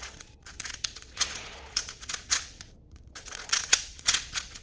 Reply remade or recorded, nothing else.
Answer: remade